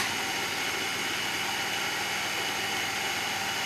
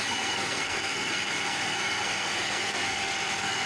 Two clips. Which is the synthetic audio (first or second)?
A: second